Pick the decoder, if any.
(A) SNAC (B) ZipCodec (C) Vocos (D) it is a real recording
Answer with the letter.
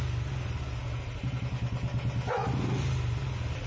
D